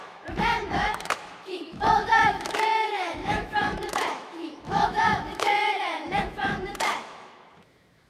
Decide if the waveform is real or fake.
fake